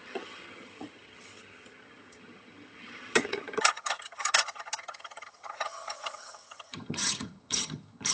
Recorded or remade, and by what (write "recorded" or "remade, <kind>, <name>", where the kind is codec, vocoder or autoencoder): remade, vocoder, HiFi-GAN